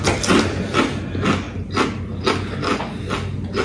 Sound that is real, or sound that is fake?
real